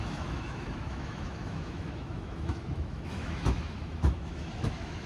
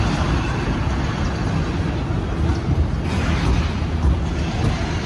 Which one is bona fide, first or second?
second